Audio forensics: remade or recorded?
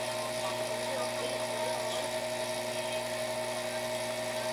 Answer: recorded